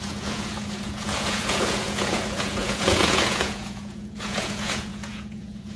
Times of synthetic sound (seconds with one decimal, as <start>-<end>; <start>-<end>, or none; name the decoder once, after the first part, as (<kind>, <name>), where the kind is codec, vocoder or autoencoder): 0.0-5.8 (vocoder, Vocos)